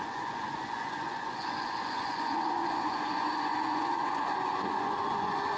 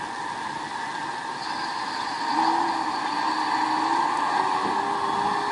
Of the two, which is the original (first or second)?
second